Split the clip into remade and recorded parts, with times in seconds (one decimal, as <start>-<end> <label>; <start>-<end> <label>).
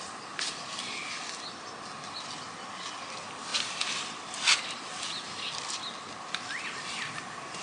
0.0-7.6 recorded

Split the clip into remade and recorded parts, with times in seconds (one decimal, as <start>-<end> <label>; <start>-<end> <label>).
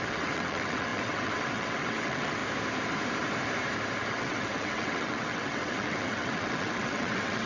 0.0-2.4 remade; 2.4-4.1 recorded; 4.1-7.5 remade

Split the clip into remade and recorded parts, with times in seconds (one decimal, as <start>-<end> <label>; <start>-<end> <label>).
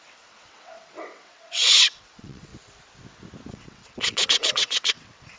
0.0-2.5 remade; 2.5-3.5 recorded; 3.5-5.4 remade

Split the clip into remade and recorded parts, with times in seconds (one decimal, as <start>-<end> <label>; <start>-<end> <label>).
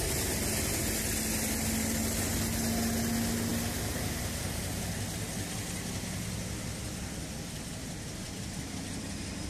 0.0-9.5 recorded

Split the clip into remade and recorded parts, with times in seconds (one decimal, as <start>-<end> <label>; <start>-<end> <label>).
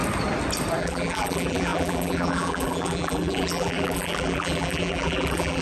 0.0-0.8 recorded; 0.8-5.6 remade